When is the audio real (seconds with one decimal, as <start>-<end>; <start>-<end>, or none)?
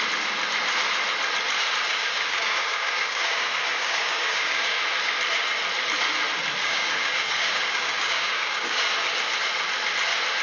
0.0-1.9; 4.8-6.6; 8.9-10.4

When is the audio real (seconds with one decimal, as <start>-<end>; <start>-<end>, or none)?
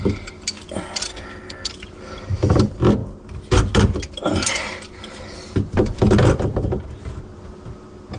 0.0-1.1; 1.7-8.2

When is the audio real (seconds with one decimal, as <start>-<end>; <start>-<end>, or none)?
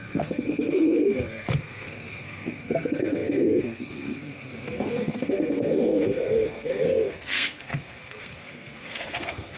none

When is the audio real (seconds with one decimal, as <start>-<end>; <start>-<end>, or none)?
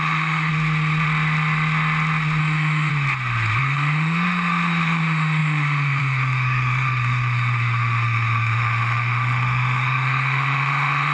0.5-2.4; 2.9-3.6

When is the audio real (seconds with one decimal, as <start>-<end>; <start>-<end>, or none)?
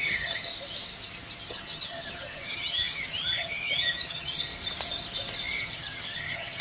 0.5-1.5; 4.5-5.6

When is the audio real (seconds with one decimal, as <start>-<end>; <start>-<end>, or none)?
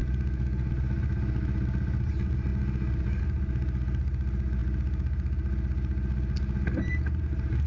0.7-7.7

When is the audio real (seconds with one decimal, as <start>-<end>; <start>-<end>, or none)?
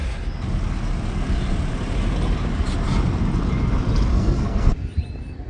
0.0-4.1; 4.7-5.5